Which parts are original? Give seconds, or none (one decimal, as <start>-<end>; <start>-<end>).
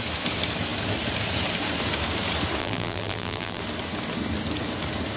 0.0-2.6; 3.6-5.2